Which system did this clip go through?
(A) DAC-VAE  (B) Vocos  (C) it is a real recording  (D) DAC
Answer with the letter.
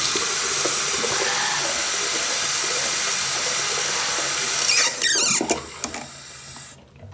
C